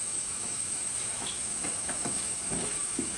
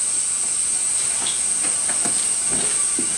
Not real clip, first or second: first